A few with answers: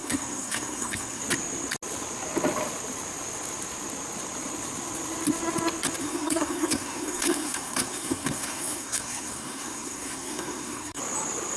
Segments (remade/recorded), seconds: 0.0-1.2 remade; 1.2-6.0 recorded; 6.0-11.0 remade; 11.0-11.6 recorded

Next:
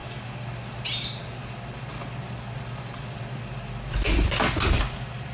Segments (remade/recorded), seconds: 0.0-5.3 recorded

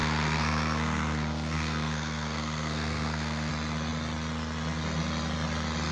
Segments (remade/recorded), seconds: 0.0-3.5 remade; 3.5-5.9 recorded